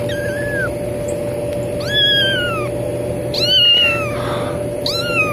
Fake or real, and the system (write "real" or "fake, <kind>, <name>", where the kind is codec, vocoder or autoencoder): real